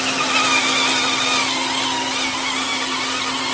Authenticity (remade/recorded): recorded